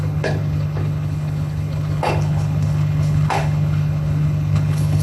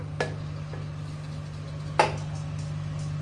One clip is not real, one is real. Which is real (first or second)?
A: second